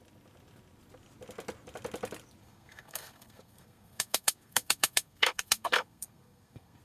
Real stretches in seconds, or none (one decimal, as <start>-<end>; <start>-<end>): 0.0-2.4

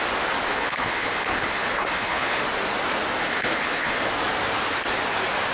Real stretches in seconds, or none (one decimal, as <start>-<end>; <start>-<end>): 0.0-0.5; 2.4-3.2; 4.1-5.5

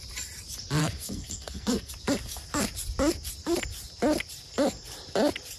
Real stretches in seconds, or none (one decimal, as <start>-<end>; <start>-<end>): 0.0-0.8; 1.9-5.6

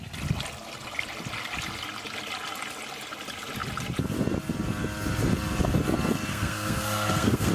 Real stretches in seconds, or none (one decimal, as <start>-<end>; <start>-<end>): 0.0-6.3

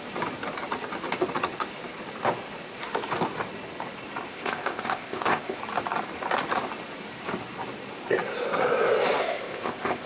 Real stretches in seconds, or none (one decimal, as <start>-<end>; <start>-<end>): 0.0-4.3; 5.6-9.2

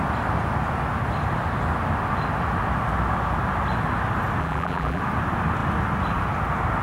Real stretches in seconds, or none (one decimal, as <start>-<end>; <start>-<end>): 0.0-4.4; 5.0-6.8